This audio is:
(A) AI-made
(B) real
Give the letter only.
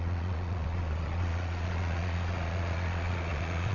A